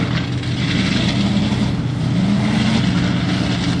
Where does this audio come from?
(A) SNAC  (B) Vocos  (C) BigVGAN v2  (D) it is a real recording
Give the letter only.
D